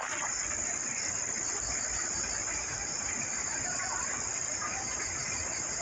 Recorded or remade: remade